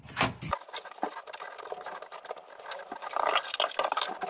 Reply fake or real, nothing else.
real